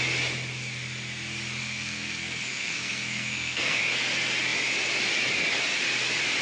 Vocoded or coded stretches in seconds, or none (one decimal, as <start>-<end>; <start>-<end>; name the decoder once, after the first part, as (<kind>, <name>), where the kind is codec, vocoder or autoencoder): 1.6-3.8 (codec, SNAC)